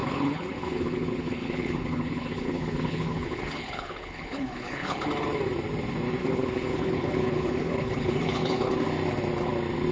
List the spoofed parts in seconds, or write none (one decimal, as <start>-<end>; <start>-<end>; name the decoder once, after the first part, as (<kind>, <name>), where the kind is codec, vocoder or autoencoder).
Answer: 0.0-5.1 (codec, HILCodec); 6.2-8.7